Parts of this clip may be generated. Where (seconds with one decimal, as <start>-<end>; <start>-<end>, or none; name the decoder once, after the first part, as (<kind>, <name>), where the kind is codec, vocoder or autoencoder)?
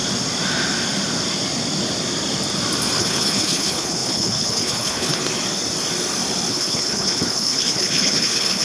3.0-5.2 (codec, HILCodec); 6.5-8.6